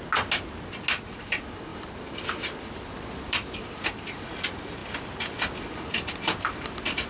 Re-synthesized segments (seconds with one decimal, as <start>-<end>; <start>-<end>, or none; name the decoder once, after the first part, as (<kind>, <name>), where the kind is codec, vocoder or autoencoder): 1.7-3.9 (vocoder, BigVGAN v2)